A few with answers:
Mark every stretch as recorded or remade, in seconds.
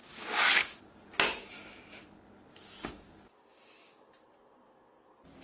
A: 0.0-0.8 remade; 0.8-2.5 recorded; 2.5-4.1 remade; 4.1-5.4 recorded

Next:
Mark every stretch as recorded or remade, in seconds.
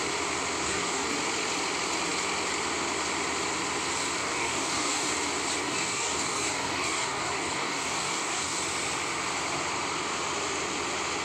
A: 0.0-0.6 recorded; 0.6-1.1 remade; 1.1-4.2 recorded; 4.2-5.1 remade; 5.1-5.6 recorded; 5.6-8.6 remade; 8.6-11.2 recorded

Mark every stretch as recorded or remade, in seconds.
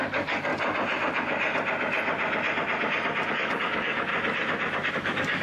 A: 0.0-0.5 remade; 0.5-3.3 recorded; 3.3-4.1 remade; 4.1-4.9 recorded; 4.9-5.4 remade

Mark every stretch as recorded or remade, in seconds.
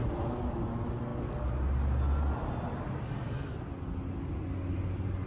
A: 0.0-5.3 recorded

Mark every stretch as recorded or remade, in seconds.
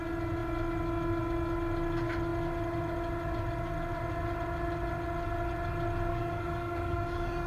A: 0.0-6.1 recorded; 6.1-7.5 remade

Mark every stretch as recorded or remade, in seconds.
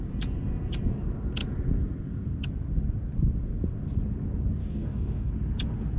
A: 0.0-4.6 recorded; 4.6-5.3 remade; 5.3-6.0 recorded